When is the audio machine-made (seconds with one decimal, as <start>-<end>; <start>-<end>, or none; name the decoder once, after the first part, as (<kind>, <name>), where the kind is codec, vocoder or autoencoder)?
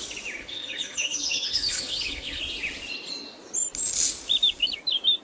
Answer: 0.4-2.4 (codec, HILCodec)